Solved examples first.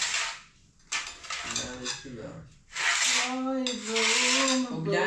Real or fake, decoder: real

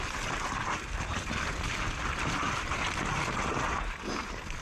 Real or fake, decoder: real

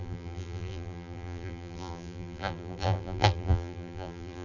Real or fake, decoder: fake, vocoder, BigVGAN v2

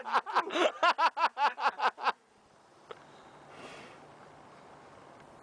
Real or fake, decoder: real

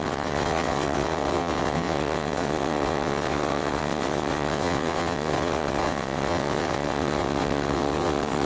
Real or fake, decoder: fake, vocoder, WaveNeXt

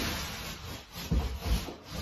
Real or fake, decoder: real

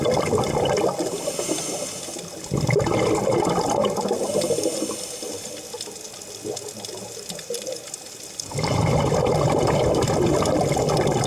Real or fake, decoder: real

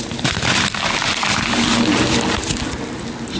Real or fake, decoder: real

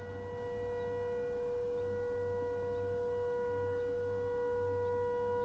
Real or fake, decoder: real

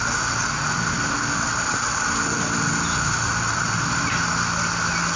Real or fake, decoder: real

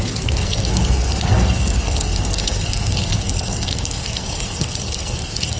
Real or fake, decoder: fake, codec, SNAC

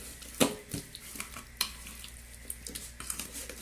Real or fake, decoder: real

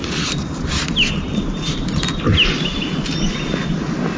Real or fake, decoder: real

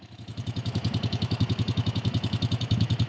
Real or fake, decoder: fake, autoencoder, DAC-VAE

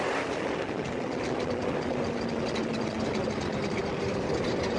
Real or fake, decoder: real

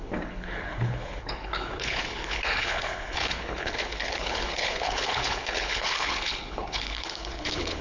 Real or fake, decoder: fake, codec, HILCodec